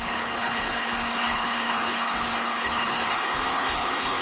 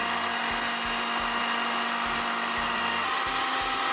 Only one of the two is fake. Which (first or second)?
first